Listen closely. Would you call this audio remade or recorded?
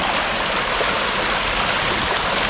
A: recorded